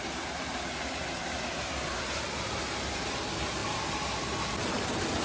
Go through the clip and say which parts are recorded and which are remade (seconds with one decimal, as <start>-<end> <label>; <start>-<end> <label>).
0.0-5.2 recorded